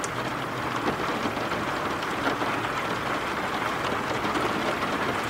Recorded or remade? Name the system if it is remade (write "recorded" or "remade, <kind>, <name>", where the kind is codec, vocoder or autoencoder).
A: recorded